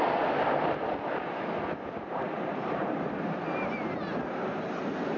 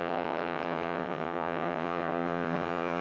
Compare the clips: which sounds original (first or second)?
first